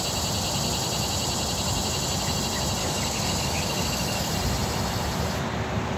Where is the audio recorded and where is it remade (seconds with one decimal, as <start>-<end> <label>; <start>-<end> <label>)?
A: 0.0-2.8 recorded; 2.8-4.3 remade; 4.3-6.0 recorded